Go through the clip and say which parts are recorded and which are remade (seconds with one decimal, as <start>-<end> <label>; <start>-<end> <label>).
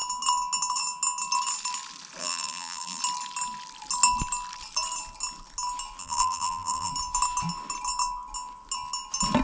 0.0-2.2 recorded; 2.2-3.0 remade; 3.0-6.0 recorded; 6.0-6.9 remade; 6.9-9.4 recorded